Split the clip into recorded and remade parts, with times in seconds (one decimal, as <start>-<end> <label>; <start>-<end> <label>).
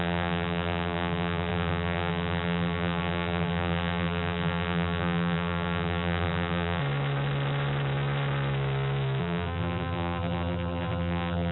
0.0-6.8 remade; 6.8-9.2 recorded; 9.2-11.5 remade